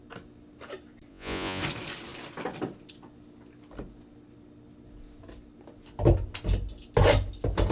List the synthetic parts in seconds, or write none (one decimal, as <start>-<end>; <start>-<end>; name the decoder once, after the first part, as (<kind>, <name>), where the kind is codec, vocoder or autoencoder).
1.1-1.6 (vocoder, Vocos)